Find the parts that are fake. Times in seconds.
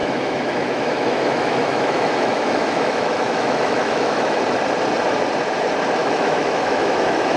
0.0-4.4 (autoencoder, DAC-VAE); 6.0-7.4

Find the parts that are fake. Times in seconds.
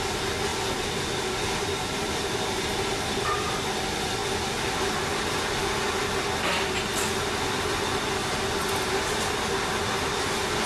none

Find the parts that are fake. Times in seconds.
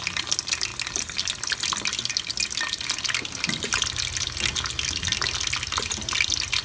none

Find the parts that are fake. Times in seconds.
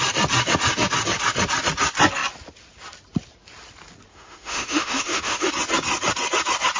4.1-5.5 (autoencoder, DAC-VAE)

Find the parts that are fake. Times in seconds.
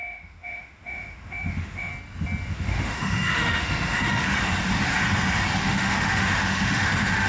0.0-1.9 (autoencoder, DAC-VAE); 2.5-4.3; 5.6-7.3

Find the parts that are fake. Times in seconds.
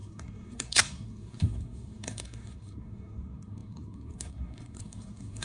0.0-5.4 (codec, SNAC)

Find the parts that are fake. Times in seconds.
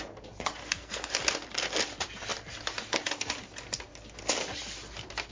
0.6-1.1 (codec, SNAC)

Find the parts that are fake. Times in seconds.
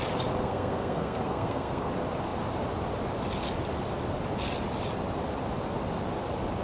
0.4-1.9 (codec, SNAC)